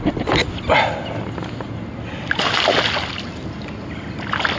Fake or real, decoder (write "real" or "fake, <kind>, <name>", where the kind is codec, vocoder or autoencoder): real